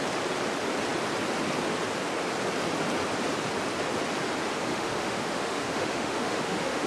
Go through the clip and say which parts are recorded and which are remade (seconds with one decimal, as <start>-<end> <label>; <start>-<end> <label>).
0.0-4.7 recorded; 4.7-6.9 remade